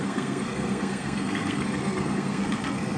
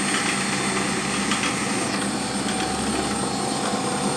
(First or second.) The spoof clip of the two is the first